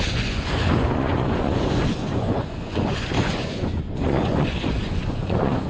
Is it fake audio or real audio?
fake